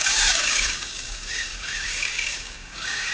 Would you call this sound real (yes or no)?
no